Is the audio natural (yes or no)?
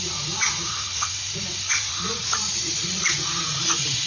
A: no